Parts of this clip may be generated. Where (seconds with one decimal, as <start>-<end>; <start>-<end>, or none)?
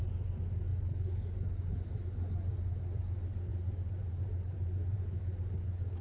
3.5-5.2